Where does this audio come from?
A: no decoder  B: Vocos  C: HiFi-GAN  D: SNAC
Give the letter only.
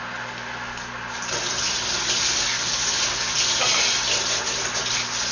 A